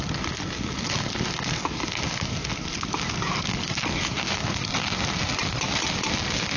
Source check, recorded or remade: recorded